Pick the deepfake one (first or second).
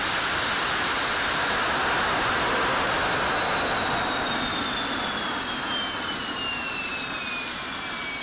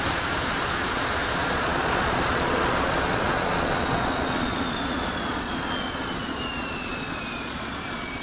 second